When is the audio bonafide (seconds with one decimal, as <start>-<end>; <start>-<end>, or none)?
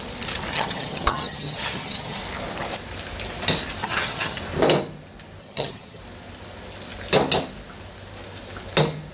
0.0-0.5; 2.2-3.8; 4.4-5.4; 6.0-9.1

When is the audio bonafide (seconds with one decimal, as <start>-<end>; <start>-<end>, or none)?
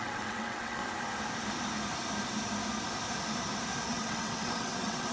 0.8-3.9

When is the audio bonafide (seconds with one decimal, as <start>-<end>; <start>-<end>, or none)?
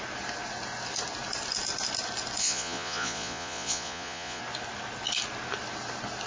0.0-2.4; 4.4-6.3